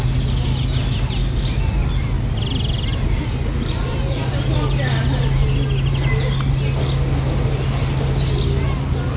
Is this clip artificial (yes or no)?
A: no